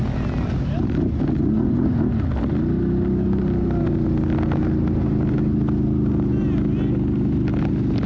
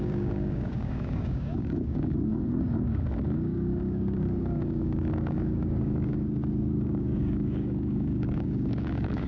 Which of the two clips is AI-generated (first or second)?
second